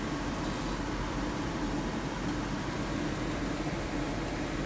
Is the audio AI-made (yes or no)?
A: no